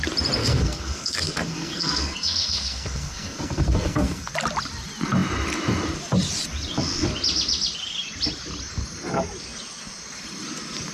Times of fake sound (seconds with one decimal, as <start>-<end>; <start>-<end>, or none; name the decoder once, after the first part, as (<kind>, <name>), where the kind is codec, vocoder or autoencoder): 0.4-4.3 (codec, SNAC)